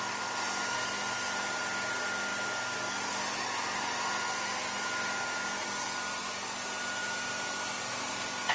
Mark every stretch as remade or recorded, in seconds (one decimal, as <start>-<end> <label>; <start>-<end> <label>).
0.0-8.5 recorded